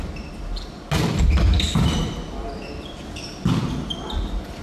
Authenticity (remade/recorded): recorded